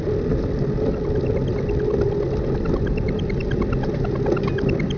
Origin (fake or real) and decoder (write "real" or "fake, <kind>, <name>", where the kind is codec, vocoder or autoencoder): real